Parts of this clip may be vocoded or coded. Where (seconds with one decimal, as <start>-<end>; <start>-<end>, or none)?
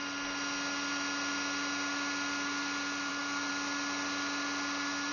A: none